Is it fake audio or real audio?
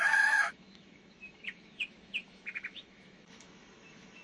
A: fake